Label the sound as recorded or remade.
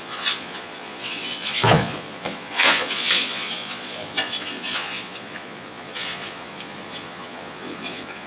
remade